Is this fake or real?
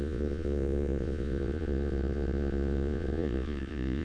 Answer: fake